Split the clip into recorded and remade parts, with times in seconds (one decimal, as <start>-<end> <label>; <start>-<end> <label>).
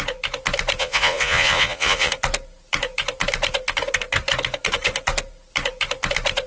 0.0-0.8 recorded; 0.8-2.1 remade; 2.1-6.5 recorded